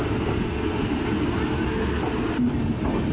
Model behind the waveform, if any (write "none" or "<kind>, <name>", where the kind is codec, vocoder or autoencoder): none